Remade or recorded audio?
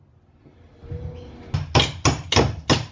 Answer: recorded